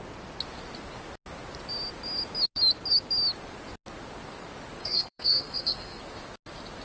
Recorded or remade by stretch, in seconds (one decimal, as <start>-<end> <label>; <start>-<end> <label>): 0.0-4.8 recorded; 4.8-6.0 remade; 6.0-6.8 recorded